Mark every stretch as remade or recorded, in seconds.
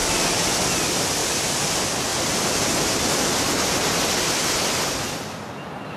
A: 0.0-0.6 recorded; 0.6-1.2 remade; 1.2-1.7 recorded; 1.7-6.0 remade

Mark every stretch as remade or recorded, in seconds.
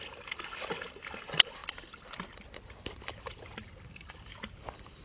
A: 0.0-5.0 remade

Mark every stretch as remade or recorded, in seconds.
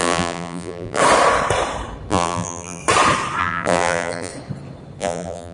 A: 0.0-1.0 remade; 1.0-2.1 recorded; 2.1-2.8 remade; 2.8-3.4 recorded; 3.4-4.3 remade; 4.3-5.0 recorded; 5.0-5.5 remade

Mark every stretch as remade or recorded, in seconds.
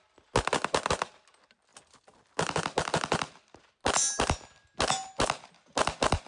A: 0.0-6.3 recorded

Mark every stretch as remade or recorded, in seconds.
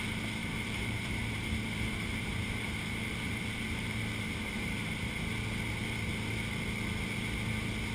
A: 0.0-0.4 recorded; 0.4-5.1 remade; 5.1-7.9 recorded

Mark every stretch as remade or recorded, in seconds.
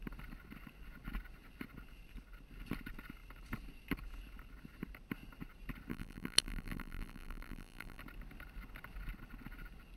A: 0.0-5.9 recorded; 5.9-8.0 remade; 8.0-10.0 recorded